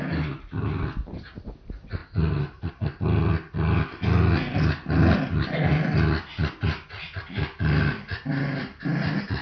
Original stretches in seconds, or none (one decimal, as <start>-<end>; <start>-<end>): 0.0-9.4